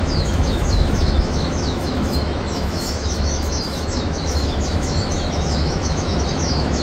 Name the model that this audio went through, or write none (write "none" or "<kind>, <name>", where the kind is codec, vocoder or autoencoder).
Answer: autoencoder, DAC-VAE